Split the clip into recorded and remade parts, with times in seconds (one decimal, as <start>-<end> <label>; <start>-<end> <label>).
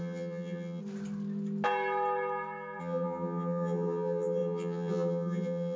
0.0-0.8 remade; 0.8-2.8 recorded; 2.8-5.8 remade